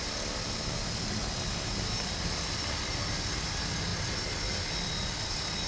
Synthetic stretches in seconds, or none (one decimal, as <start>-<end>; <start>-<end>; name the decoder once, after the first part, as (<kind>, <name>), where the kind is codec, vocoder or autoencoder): 0.0-1.2 (vocoder, BigVGAN v2); 2.1-3.9; 4.7-5.7